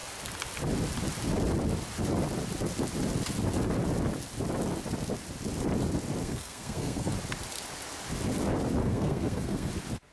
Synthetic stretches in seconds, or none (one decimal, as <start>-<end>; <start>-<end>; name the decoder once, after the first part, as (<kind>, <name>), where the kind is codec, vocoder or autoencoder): 6.2-7.1 (codec, SNAC); 8.8-9.7

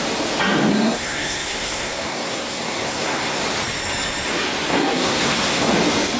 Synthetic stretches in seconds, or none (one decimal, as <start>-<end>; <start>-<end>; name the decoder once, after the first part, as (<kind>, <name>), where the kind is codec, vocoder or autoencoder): 0.7-3.4 (codec, SNAC); 4.7-5.6

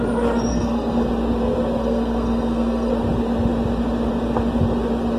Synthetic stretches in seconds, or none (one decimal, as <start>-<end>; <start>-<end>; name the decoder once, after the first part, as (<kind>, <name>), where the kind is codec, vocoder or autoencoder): 0.5-1.1 (codec, SNAC); 1.8-2.9

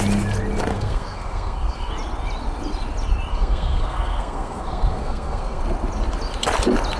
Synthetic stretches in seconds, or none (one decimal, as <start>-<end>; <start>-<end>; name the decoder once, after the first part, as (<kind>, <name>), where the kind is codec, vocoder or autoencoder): 0.7-1.9 (codec, SNAC); 3.3-5.6